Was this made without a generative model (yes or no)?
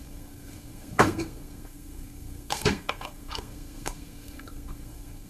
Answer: no